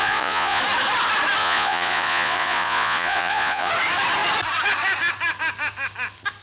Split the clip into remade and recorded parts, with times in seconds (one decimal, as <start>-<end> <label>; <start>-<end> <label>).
0.0-0.6 remade; 0.6-1.4 recorded; 1.4-3.7 remade; 3.7-6.4 recorded